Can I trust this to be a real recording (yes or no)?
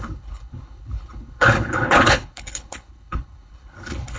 no